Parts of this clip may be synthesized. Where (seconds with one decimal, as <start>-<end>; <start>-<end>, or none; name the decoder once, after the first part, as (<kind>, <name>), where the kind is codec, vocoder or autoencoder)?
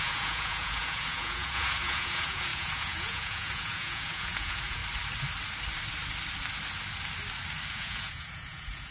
0.0-4.8 (vocoder, Vocos); 7.7-8.9